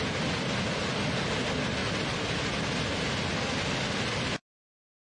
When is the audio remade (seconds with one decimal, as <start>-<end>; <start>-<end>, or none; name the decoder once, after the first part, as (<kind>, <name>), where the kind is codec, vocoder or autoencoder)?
none